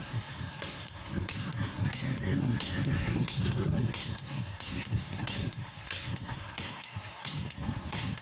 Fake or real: fake